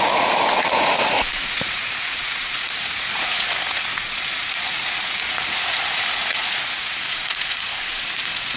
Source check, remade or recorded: remade